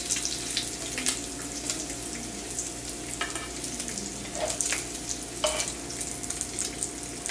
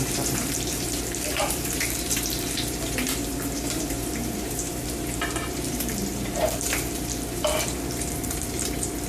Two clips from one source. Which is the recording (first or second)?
first